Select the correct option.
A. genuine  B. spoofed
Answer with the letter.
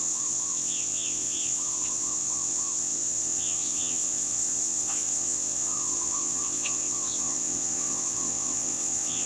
B